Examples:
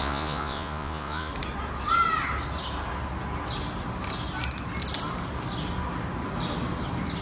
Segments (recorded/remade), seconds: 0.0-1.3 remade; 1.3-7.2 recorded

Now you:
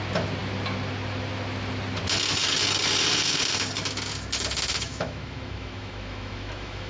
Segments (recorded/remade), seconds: 0.0-4.7 recorded; 4.7-6.9 remade

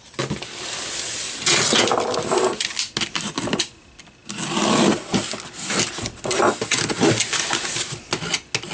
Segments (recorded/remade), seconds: 0.0-8.7 recorded

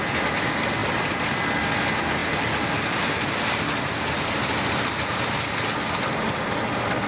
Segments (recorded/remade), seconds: 0.0-7.1 recorded

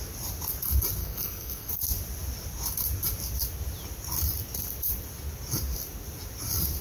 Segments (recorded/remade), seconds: 0.0-1.0 recorded; 1.0-1.7 remade; 1.7-6.8 recorded

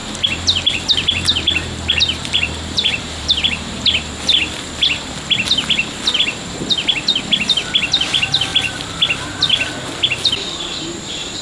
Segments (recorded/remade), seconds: 0.0-3.8 remade; 3.8-11.4 recorded